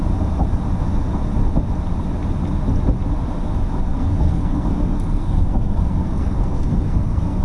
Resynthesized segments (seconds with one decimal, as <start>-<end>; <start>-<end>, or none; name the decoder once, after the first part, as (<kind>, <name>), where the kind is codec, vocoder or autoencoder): 3.9-7.4 (codec, SNAC)